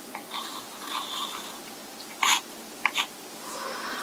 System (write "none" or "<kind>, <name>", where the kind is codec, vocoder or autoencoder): none